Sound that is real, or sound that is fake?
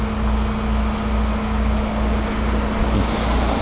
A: real